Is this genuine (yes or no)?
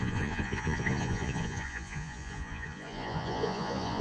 no